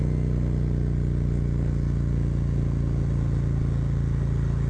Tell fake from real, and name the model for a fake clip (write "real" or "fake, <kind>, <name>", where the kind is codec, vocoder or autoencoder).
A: real